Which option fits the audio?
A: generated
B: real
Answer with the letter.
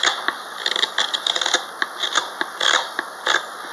B